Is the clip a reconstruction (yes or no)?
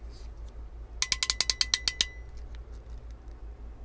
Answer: no